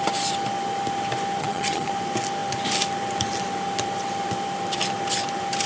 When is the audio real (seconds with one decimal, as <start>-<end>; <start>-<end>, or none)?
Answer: 0.0-1.4; 1.9-5.7